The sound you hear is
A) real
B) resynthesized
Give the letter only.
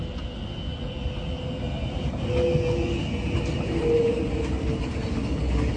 A